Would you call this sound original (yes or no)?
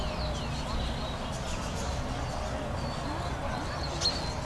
yes